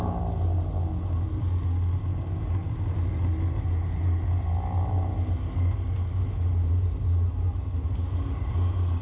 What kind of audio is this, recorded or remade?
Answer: recorded